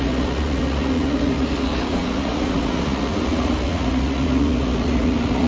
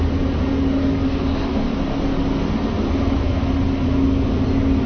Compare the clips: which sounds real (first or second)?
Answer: second